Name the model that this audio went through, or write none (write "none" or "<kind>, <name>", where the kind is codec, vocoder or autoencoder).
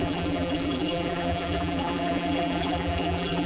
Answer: vocoder, BigVGAN v2